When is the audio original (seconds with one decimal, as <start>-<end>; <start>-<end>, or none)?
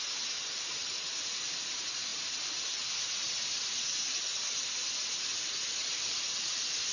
0.0-5.8; 6.4-6.9